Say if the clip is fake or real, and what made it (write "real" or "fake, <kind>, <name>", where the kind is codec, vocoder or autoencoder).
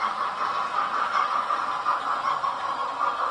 real